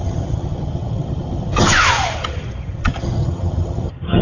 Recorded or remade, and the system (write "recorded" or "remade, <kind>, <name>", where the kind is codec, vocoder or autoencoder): remade, vocoder, HiFi-GAN